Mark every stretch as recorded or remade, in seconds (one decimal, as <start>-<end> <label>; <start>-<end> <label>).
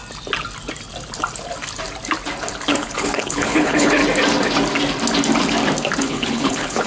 0.0-2.8 recorded; 2.8-4.0 remade; 4.0-6.0 recorded; 6.0-6.9 remade